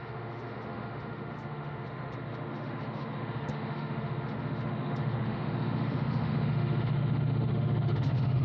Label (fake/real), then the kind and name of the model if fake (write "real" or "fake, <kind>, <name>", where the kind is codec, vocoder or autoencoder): fake, autoencoder, DAC-VAE